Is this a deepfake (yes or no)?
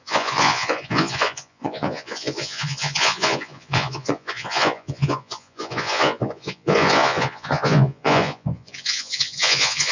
yes